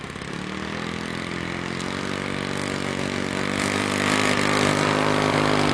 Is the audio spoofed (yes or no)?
no